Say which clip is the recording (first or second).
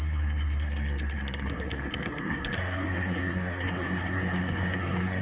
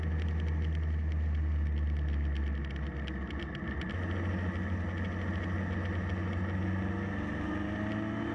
second